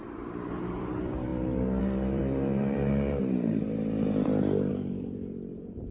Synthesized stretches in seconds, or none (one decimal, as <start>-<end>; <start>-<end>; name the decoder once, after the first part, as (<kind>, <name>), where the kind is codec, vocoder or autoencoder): 0.0-1.3 (vocoder, BigVGAN v2); 1.8-5.9